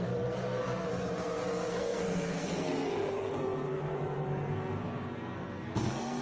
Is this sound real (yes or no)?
no